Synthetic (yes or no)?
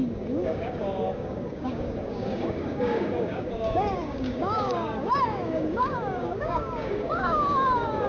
yes